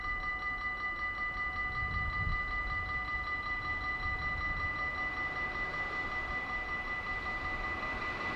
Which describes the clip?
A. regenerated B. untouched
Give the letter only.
B